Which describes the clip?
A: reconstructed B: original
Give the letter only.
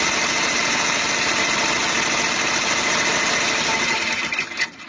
B